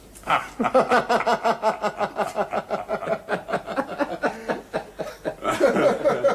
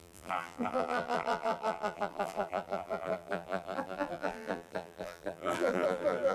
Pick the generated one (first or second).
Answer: second